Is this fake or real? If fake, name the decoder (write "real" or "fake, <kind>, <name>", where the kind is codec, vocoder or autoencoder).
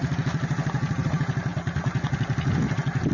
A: real